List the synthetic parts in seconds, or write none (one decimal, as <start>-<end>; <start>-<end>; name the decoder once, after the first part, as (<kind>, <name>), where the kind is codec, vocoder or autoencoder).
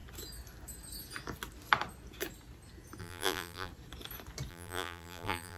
3.0-3.7 (vocoder, BigVGAN v2); 4.5-5.6